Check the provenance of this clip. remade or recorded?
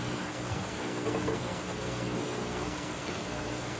remade